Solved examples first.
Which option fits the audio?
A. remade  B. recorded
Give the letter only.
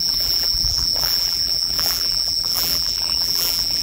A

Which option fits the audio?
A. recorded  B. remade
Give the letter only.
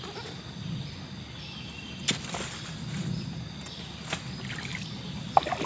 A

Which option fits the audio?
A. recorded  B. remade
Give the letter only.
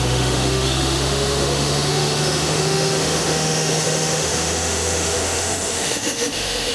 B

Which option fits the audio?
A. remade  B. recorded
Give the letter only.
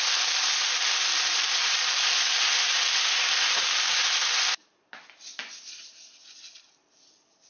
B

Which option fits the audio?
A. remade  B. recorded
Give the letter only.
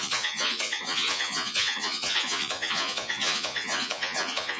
A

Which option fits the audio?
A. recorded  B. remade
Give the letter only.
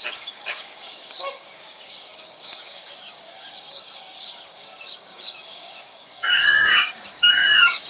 B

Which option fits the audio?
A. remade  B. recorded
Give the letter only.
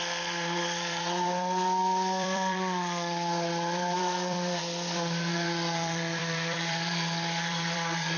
A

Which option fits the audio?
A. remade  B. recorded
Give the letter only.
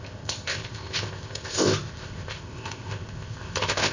A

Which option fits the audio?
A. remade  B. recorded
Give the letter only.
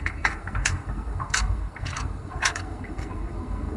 A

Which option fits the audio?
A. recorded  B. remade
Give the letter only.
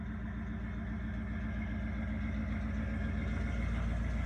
A